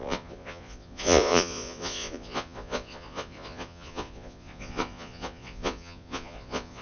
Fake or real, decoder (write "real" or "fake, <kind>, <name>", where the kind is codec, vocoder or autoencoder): fake, vocoder, Vocos